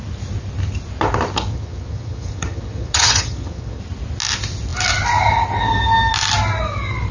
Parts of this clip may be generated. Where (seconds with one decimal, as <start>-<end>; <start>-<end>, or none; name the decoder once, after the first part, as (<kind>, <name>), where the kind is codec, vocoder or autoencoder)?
1.5-3.8 (vocoder, HiFi-GAN)